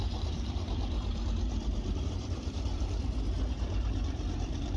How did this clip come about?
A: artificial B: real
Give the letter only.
A